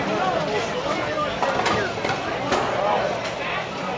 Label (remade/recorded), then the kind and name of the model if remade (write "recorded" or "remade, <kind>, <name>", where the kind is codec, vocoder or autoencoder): recorded